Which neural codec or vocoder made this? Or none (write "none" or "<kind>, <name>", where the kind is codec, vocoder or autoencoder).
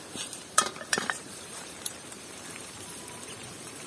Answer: vocoder, BigVGAN v2